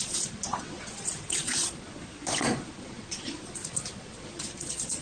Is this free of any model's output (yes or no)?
no